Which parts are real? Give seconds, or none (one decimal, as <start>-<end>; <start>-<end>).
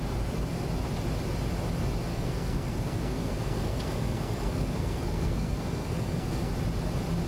0.0-2.1; 6.5-7.3